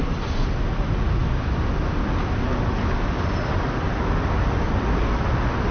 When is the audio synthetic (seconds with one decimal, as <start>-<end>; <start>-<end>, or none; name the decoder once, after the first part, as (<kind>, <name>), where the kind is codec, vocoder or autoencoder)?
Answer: 1.2-4.6 (vocoder, BigVGAN v2)